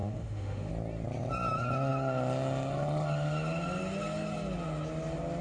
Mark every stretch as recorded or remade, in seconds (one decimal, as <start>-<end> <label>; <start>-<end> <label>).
0.0-0.7 remade; 0.7-5.4 recorded